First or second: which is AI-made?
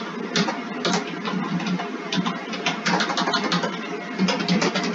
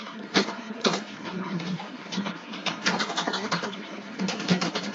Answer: second